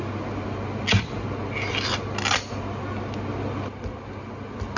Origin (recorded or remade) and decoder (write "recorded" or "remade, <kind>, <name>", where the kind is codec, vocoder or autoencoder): recorded